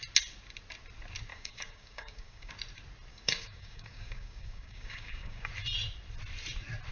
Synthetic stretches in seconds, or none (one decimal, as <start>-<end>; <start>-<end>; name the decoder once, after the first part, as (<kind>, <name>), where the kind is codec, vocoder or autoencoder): 1.3-2.5 (codec, DAC); 3.1-5.5